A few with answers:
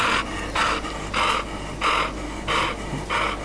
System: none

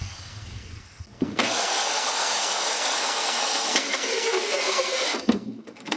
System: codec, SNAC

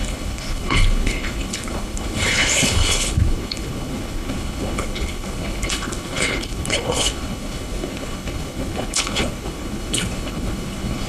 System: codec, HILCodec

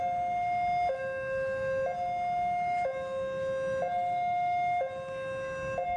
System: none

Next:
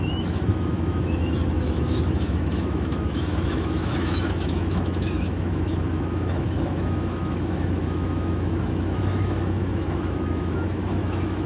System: autoencoder, DAC-VAE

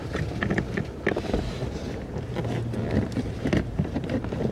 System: none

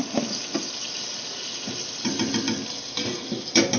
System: none